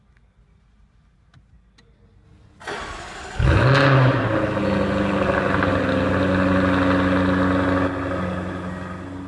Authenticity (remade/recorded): recorded